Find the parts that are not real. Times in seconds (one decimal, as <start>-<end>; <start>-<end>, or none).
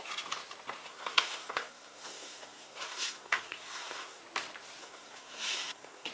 0.8-4.2; 4.8-6.1